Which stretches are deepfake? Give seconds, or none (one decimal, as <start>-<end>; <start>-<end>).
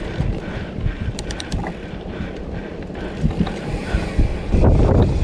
0.0-2.7; 3.8-4.3